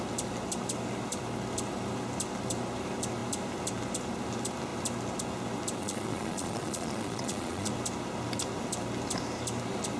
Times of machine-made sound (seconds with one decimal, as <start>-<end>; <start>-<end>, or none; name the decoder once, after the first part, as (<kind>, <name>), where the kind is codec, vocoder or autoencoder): 5.8-7.7 (vocoder, Vocos)